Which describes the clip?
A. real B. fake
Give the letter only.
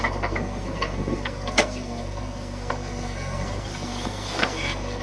B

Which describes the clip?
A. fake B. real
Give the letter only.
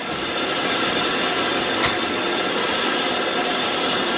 B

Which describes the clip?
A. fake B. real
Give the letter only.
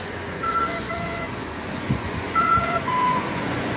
A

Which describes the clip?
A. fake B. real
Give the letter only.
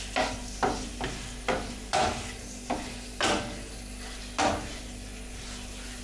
B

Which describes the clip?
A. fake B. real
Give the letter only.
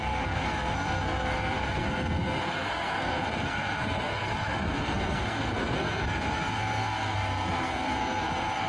A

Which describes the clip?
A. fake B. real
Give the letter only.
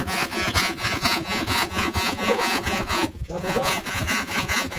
A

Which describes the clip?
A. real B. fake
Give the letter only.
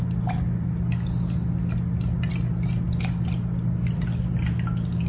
A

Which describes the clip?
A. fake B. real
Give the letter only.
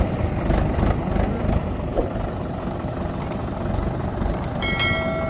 B